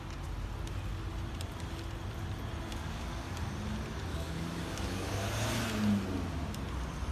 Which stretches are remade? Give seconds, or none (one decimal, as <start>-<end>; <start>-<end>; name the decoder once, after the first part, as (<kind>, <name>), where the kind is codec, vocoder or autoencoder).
2.7-3.3 (codec, DAC); 4.1-5.1